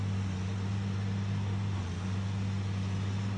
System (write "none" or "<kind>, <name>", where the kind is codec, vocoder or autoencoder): none